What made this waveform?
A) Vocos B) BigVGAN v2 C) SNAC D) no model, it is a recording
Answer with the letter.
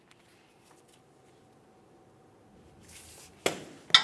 D